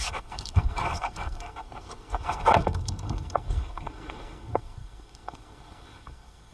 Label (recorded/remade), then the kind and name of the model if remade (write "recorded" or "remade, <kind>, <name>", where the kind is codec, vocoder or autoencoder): remade, codec, SNAC